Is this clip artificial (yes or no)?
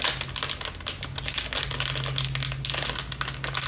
no